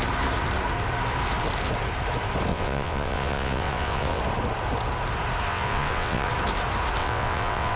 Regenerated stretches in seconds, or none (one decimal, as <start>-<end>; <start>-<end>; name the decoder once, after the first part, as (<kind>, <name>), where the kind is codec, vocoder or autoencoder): 2.5-4.2 (vocoder, WaveNeXt); 5.5-6.3; 7.0-7.8